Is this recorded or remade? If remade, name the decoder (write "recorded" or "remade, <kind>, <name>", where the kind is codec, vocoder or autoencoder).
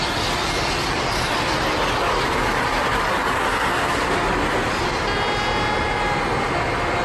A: recorded